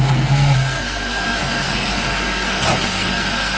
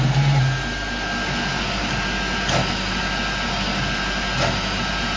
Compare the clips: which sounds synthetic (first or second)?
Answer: first